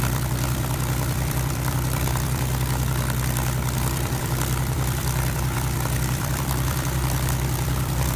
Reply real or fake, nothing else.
fake